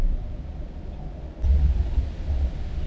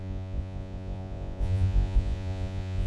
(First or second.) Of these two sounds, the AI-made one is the second